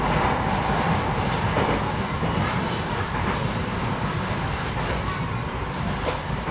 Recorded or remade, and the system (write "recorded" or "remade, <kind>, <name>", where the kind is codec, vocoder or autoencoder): recorded